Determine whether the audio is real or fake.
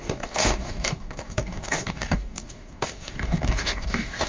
fake